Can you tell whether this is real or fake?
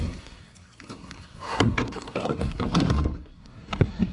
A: fake